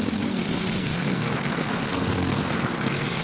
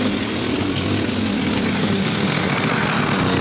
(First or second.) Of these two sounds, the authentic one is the second